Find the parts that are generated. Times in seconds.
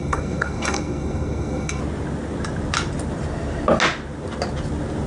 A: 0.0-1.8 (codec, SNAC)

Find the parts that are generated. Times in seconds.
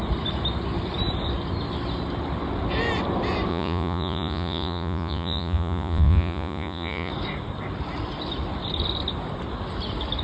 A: 3.5-7.1 (vocoder, Vocos)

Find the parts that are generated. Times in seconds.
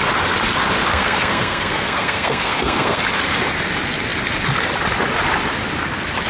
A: 0.9-3.0 (codec, SNAC)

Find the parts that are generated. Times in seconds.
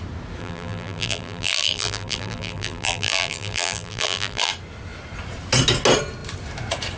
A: 0.4-4.5 (vocoder, BigVGAN v2)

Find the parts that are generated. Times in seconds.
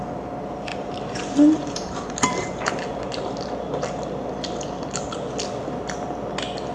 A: 0.7-2.7 (vocoder, BigVGAN v2)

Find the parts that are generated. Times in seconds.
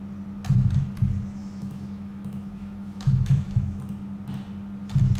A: 1.4-3.8 (autoencoder, DAC-VAE)